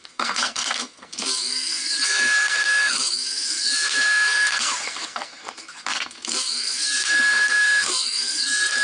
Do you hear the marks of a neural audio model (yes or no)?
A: yes